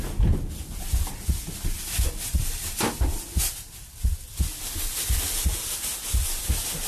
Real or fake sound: real